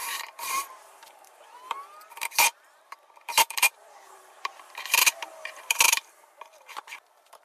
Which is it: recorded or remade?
remade